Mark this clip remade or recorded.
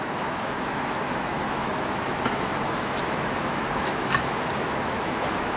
remade